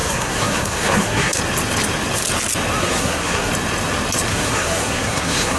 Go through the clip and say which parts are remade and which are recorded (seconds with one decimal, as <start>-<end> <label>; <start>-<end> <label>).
0.0-1.4 remade; 1.4-2.8 recorded; 2.8-3.5 remade; 3.5-4.3 recorded; 4.3-5.6 remade